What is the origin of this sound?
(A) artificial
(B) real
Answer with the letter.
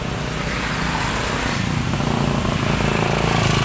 B